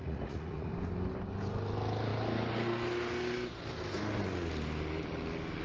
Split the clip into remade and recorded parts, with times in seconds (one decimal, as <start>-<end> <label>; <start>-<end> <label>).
0.0-0.7 remade; 0.7-5.6 recorded